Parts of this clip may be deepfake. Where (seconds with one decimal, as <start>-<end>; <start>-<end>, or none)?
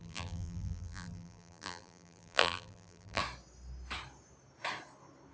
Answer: 0.0-3.2